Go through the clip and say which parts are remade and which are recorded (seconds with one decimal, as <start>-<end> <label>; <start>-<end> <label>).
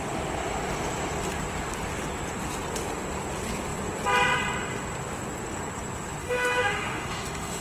0.0-6.2 recorded; 6.2-7.6 remade